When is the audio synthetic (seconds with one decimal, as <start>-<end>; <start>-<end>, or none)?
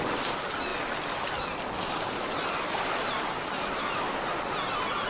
none